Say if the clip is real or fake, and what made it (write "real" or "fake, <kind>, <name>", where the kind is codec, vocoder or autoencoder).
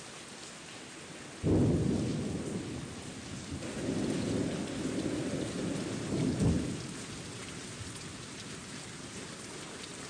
real